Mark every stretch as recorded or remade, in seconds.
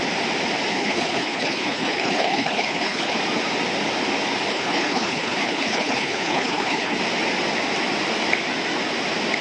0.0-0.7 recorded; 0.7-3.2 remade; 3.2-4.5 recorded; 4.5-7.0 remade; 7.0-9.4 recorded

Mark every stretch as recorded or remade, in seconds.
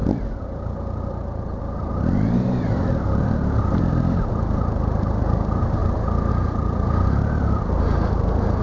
0.0-5.8 remade; 5.8-6.3 recorded; 6.3-8.6 remade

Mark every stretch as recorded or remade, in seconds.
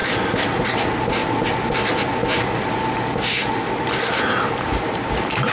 0.0-0.6 recorded; 0.6-1.2 remade; 1.2-4.4 recorded; 4.4-5.5 remade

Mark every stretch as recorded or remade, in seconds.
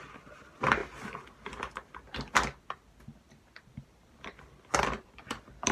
0.0-0.8 remade; 0.8-2.6 recorded; 2.6-5.7 remade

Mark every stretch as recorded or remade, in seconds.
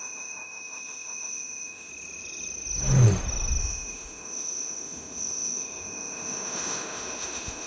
0.0-1.9 remade; 1.9-3.6 recorded; 3.6-7.7 remade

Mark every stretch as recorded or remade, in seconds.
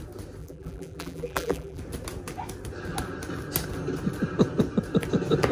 0.0-0.4 recorded; 0.4-1.8 remade; 1.8-5.5 recorded